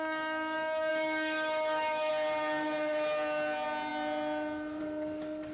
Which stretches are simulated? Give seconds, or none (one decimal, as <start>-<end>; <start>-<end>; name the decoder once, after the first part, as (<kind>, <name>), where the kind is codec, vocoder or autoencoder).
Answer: 0.9-2.1 (autoencoder, DAC-VAE)